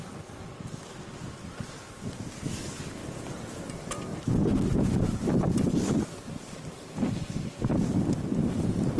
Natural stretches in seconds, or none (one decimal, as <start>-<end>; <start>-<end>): 0.0-3.0; 3.6-4.1; 7.1-9.0